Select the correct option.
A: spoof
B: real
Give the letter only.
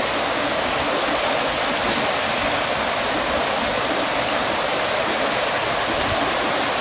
A